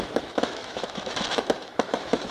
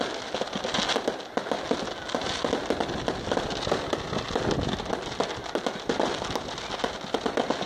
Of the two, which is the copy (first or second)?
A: first